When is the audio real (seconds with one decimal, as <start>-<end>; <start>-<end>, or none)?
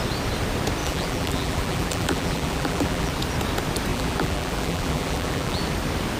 0.0-0.8; 3.1-3.9; 5.6-6.2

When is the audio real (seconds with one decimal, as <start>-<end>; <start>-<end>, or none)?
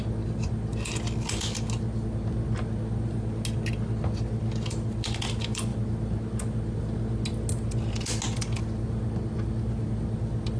0.0-10.6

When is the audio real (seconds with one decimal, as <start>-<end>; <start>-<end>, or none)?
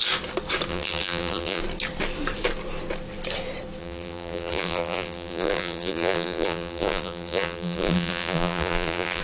0.0-0.7; 1.6-3.8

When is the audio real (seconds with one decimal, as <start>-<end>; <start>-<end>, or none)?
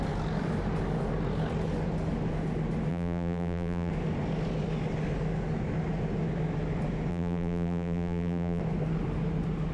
0.0-2.9; 3.9-7.1; 8.6-9.7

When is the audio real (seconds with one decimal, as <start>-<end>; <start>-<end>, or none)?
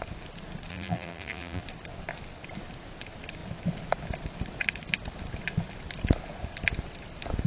0.0-0.7; 1.6-7.5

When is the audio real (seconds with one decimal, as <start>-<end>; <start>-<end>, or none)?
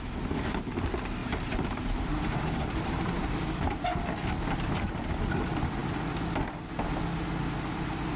5.8-6.7